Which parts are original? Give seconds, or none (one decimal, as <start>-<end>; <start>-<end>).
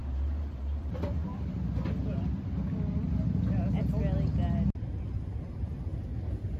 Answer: 1.3-5.0; 5.9-6.6